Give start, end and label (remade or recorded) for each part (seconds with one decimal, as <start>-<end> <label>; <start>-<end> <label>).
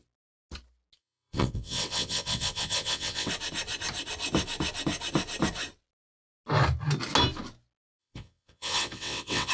0.0-1.0 recorded; 1.0-3.3 remade; 3.3-8.0 recorded; 8.0-9.5 remade